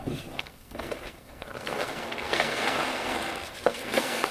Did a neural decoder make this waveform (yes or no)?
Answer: yes